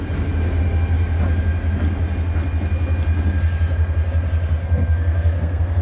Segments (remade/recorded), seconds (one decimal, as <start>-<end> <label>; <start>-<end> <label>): 0.0-4.6 recorded; 4.6-5.8 remade